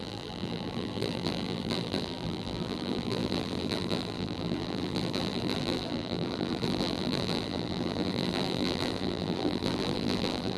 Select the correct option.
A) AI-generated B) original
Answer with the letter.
A